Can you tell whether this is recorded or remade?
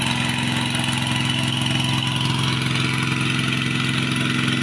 recorded